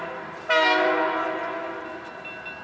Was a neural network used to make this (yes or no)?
no